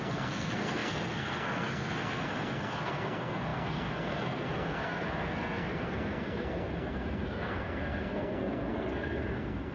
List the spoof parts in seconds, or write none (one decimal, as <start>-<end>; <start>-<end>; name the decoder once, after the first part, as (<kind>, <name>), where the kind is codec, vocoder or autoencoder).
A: 0.0-9.7 (codec, SNAC)

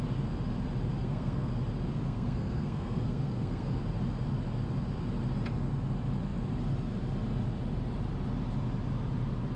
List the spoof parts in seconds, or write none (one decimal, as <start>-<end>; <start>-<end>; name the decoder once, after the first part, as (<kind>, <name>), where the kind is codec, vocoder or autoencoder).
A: 1.0-1.5 (codec, SNAC); 1.9-3.8

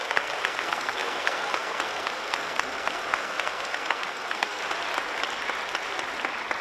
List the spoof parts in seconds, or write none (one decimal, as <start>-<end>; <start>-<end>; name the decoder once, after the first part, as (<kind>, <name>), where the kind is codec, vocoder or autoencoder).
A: 0.0-4.6 (codec, SNAC)

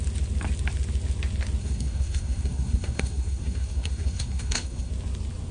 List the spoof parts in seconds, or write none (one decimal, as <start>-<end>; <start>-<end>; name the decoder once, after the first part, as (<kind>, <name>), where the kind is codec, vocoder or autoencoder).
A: 1.6-4.9 (codec, SNAC)

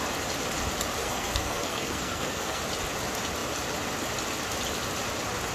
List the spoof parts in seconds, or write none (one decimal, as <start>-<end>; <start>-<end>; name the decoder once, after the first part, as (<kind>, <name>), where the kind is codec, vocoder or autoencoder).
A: 1.0-2.6 (codec, SNAC)